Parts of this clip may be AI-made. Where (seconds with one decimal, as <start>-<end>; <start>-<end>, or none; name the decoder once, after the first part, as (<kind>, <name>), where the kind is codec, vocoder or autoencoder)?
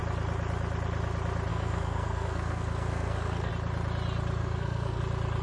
1.5-3.5 (codec, SNAC); 4.4-5.0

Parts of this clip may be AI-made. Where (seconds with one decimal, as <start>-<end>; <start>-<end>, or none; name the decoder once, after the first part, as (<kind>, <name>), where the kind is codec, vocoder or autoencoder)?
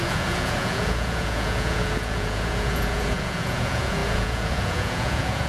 0.0-5.5 (vocoder, Vocos)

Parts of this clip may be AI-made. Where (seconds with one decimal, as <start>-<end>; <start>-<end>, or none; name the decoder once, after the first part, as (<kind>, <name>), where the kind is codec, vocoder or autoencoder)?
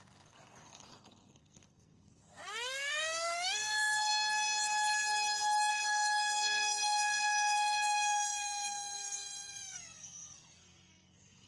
0.0-4.1 (codec, SNAC); 5.7-11.5